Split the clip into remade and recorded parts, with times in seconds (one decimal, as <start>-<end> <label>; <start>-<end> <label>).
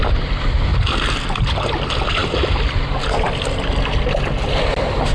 0.0-5.1 recorded